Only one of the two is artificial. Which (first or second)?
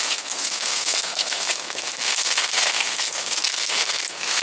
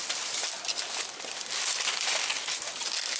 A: first